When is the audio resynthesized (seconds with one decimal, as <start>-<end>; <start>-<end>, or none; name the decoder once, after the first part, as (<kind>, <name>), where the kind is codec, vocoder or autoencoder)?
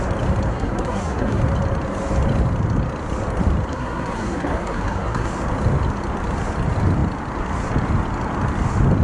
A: 0.5-1.4 (codec, SNAC); 3.7-5.3